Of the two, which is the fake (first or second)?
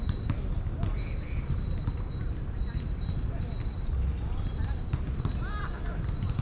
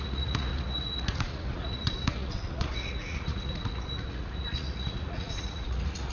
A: second